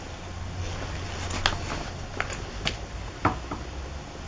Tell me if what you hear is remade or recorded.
recorded